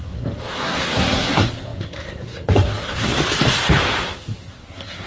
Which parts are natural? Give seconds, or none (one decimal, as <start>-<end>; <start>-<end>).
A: 3.1-4.0